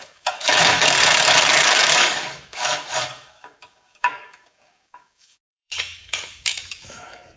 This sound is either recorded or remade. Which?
remade